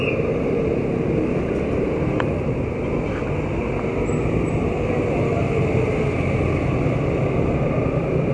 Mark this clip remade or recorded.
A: recorded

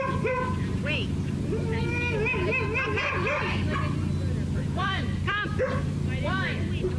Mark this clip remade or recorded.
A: recorded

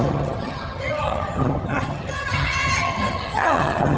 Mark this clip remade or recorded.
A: remade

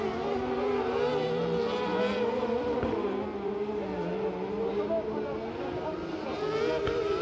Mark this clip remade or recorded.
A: recorded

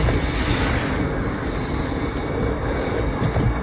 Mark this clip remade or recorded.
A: recorded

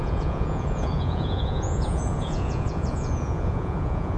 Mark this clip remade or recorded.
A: remade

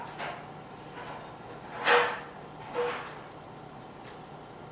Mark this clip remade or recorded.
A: recorded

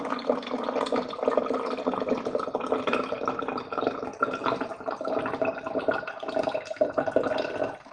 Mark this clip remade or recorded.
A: recorded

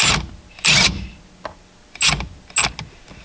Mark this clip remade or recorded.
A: recorded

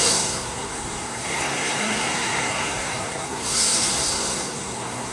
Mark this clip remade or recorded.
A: remade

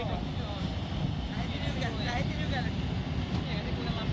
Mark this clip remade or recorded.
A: recorded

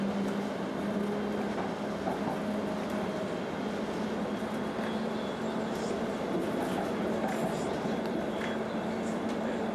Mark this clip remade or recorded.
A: recorded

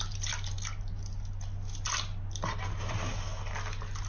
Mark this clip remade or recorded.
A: recorded